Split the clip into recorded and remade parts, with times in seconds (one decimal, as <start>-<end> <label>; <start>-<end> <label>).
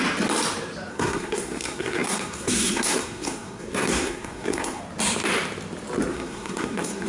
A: 0.0-0.9 recorded; 0.9-4.8 remade; 4.8-6.1 recorded; 6.1-7.1 remade